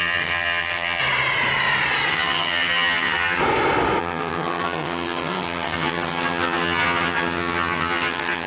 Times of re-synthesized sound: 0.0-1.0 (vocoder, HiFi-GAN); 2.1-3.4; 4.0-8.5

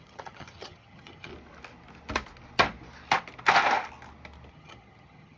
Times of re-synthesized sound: 0.0-1.3 (vocoder, HiFi-GAN); 4.5-5.4

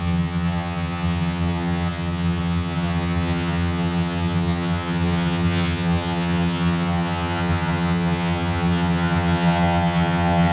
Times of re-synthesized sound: 0.0-10.5 (vocoder, HiFi-GAN)

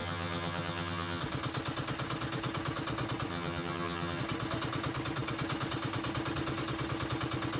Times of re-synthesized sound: 0.0-1.2 (vocoder, HiFi-GAN); 3.3-4.2

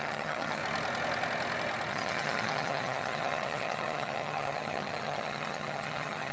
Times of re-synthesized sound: 0.0-0.6 (vocoder, HiFi-GAN); 1.9-6.3

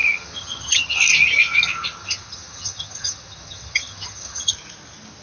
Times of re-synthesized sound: 0.0-1.0 (vocoder, HiFi-GAN); 2.0-4.5